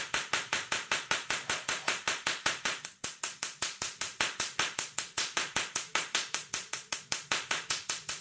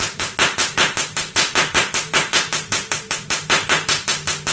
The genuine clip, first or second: second